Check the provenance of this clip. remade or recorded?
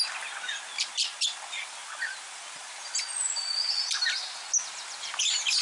recorded